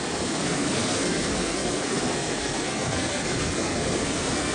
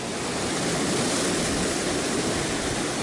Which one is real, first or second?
second